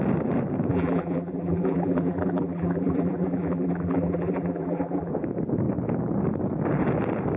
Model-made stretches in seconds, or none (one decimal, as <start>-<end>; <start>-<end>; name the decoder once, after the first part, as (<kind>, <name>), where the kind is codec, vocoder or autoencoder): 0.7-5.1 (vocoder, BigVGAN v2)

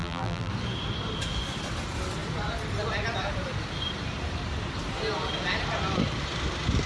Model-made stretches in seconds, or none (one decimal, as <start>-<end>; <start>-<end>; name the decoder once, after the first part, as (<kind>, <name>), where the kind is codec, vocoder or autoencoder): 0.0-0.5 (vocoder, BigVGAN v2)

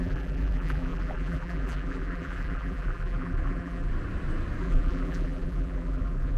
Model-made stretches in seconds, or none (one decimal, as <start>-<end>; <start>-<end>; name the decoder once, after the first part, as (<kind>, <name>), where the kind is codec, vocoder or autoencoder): 0.0-3.9 (vocoder, BigVGAN v2); 4.6-6.4